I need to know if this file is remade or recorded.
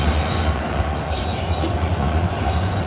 remade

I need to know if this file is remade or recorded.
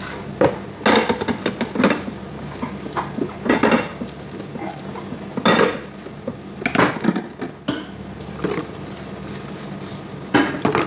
recorded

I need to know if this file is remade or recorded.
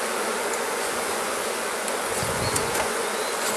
remade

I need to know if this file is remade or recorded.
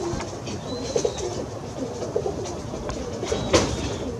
recorded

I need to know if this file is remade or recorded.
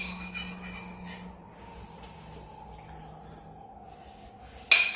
recorded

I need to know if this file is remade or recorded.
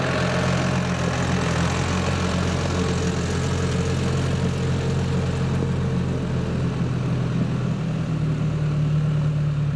recorded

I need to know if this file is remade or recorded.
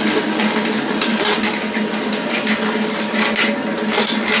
recorded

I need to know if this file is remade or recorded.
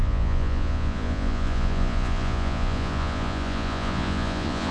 remade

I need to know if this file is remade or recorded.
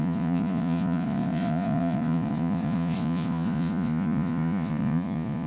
remade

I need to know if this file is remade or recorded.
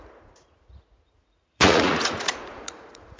remade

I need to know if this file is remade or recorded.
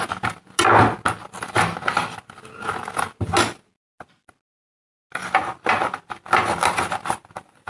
recorded